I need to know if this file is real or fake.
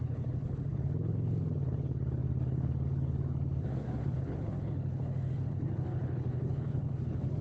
fake